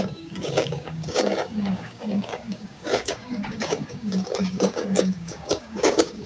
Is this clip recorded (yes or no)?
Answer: no